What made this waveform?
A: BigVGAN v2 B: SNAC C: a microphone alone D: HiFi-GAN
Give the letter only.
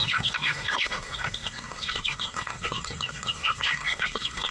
B